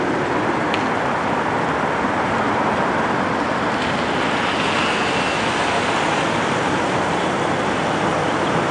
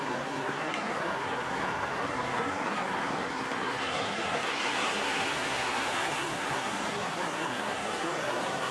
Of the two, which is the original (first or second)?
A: first